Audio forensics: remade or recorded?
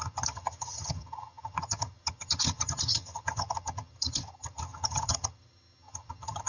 remade